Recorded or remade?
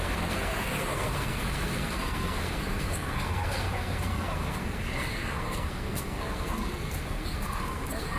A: remade